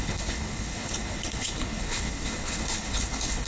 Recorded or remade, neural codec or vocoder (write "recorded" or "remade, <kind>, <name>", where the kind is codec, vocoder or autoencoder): remade, codec, HILCodec